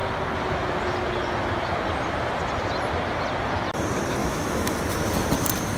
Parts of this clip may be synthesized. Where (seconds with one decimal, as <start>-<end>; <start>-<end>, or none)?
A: 4.2-4.8